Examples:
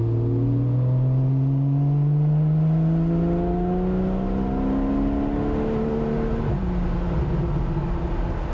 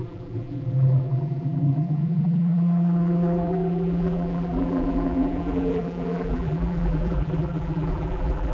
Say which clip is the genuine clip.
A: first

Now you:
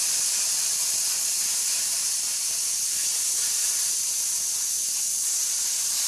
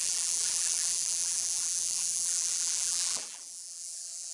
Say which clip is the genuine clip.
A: first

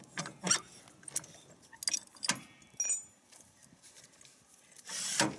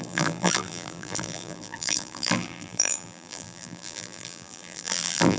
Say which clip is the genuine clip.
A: first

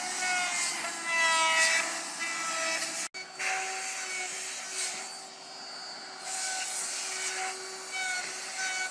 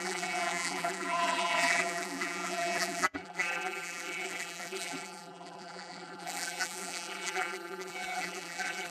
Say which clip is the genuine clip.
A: first